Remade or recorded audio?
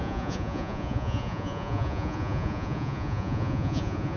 remade